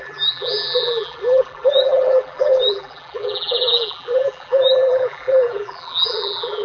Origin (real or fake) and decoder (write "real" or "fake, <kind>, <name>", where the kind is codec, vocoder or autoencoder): fake, vocoder, BigVGAN v2